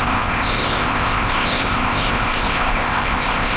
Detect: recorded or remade remade